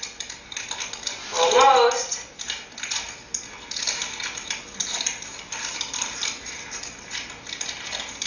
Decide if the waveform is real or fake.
real